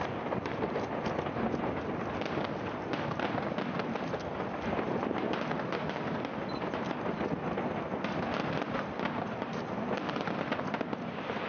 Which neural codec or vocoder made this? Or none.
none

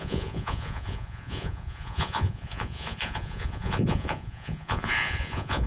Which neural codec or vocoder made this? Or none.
vocoder, Vocos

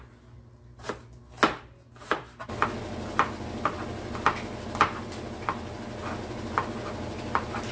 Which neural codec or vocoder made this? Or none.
none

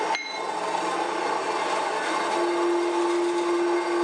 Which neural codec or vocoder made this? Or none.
none